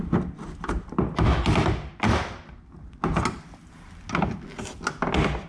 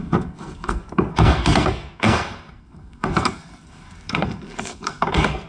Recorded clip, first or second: first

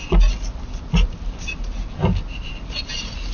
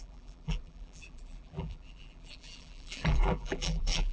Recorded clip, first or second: first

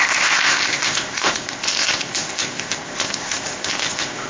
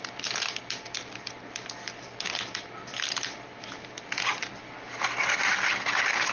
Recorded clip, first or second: second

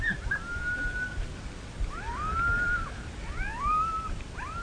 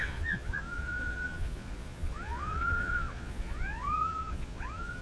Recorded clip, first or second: first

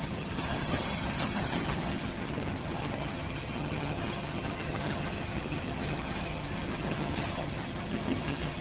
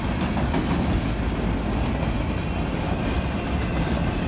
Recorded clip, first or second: second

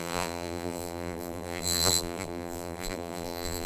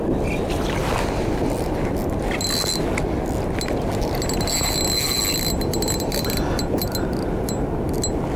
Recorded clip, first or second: second